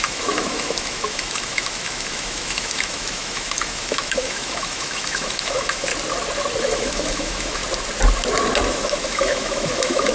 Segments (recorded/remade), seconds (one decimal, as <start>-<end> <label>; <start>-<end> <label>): 0.0-5.9 remade; 5.9-6.6 recorded; 6.6-7.6 remade; 7.6-8.7 recorded; 8.7-10.1 remade